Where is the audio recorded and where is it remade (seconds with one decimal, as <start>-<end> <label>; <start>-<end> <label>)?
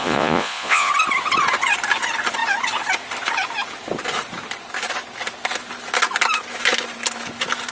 0.0-0.9 remade; 0.9-7.7 recorded